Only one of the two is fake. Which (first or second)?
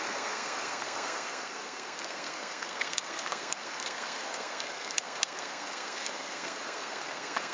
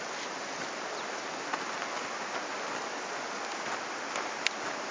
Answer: first